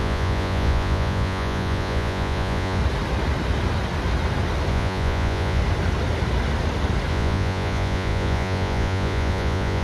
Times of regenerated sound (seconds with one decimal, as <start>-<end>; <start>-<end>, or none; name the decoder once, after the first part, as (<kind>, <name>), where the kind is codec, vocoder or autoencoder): 0.0-2.8 (vocoder, Vocos); 4.7-5.6; 7.1-9.8